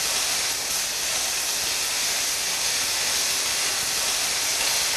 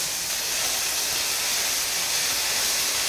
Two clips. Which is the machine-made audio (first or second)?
second